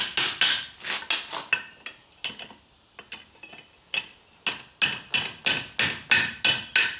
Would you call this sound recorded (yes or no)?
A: yes